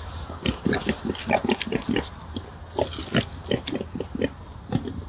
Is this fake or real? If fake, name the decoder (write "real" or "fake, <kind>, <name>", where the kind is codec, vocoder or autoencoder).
real